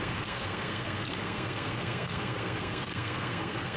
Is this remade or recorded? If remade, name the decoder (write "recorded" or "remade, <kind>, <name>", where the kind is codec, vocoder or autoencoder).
remade, codec, SNAC